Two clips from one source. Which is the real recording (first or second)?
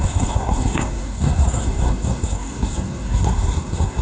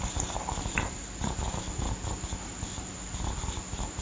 second